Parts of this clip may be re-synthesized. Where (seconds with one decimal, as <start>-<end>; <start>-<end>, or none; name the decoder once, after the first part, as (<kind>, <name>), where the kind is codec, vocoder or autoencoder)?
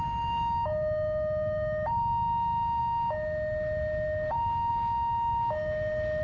none